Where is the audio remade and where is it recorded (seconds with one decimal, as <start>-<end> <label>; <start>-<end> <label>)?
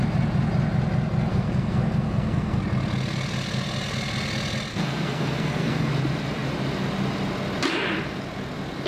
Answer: 0.0-1.3 recorded; 1.3-2.6 remade; 2.6-4.7 recorded; 4.7-5.9 remade; 5.9-8.9 recorded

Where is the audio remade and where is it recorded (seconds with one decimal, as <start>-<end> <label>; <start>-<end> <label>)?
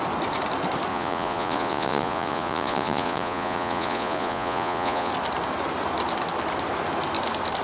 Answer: 0.0-0.9 recorded; 0.9-5.1 remade; 5.1-7.6 recorded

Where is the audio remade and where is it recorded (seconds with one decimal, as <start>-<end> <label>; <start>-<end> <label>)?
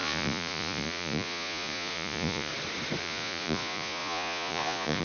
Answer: 0.0-2.5 remade; 2.5-3.0 recorded; 3.0-5.0 remade